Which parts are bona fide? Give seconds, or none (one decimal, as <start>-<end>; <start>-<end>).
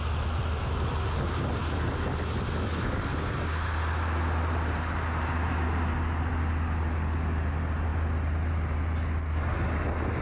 0.0-10.2